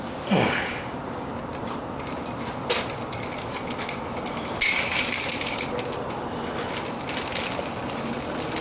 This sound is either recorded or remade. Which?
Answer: recorded